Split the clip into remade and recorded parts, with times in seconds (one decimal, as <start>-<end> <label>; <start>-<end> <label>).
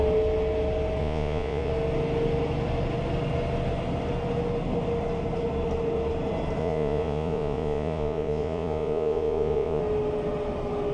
0.0-1.0 recorded; 1.0-1.7 remade; 1.7-6.6 recorded; 6.6-9.8 remade; 9.8-10.9 recorded